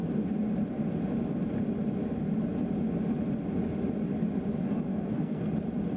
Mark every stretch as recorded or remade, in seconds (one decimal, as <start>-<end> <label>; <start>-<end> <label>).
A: 0.0-4.9 recorded; 4.9-5.5 remade; 5.5-6.0 recorded